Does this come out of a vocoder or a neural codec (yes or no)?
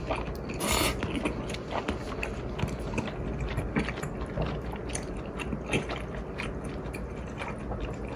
no